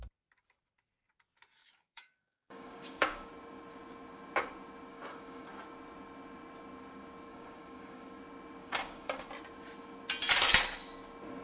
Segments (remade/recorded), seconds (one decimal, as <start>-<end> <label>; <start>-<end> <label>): 0.0-1.6 recorded; 1.6-3.3 remade; 3.3-4.9 recorded; 4.9-5.5 remade; 5.5-7.3 recorded; 7.3-8.2 remade; 8.2-8.6 recorded; 8.6-9.3 remade; 9.3-11.4 recorded